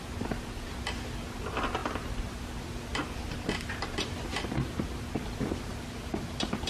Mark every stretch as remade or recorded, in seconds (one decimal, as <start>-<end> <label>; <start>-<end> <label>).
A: 0.0-6.7 recorded